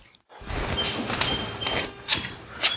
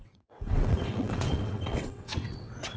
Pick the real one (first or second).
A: first